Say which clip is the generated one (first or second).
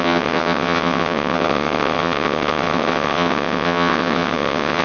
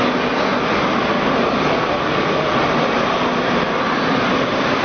first